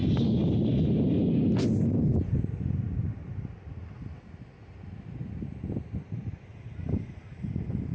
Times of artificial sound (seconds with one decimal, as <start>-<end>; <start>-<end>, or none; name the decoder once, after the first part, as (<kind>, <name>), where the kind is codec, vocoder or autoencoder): none